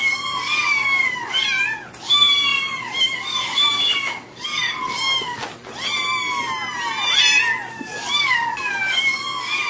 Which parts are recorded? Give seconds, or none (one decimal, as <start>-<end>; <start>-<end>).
1.4-2.0; 5.4-7.7